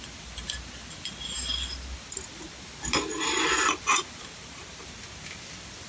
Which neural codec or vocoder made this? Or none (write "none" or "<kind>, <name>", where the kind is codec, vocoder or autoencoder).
none